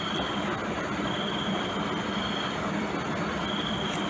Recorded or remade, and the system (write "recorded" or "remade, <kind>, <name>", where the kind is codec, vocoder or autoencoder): recorded